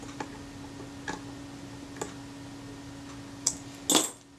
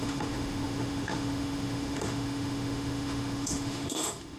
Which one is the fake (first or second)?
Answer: second